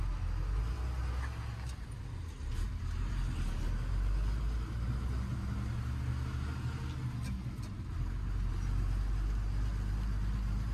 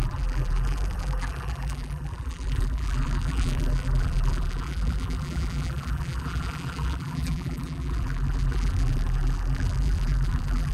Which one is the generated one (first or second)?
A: second